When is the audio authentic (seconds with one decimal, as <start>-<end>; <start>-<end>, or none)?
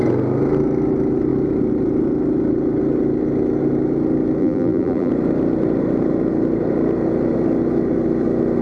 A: 0.0-4.4; 5.1-8.6